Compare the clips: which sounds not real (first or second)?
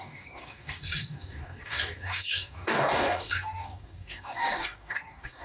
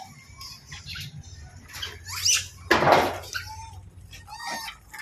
first